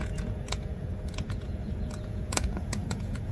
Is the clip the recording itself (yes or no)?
no